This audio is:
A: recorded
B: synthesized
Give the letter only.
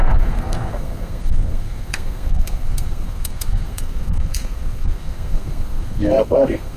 B